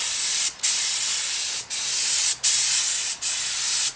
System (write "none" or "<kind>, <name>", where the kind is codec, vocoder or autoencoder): none